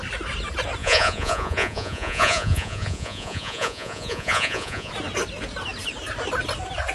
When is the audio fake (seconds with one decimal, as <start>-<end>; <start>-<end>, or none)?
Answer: 0.8-4.9